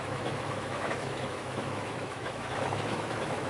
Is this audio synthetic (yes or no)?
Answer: yes